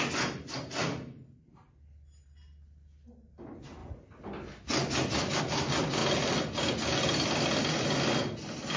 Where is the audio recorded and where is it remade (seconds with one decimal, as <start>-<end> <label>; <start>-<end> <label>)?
0.0-8.8 recorded